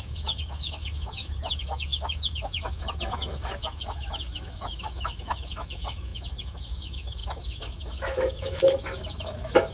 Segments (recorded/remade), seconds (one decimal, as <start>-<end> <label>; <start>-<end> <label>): 0.0-9.7 remade